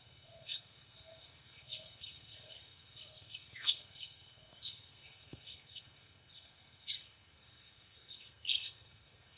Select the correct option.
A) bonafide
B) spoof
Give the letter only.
B